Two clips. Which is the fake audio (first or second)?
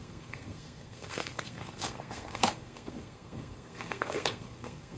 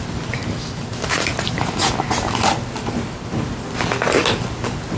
first